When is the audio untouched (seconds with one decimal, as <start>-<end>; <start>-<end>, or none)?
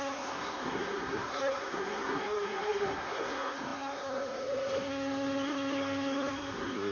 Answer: none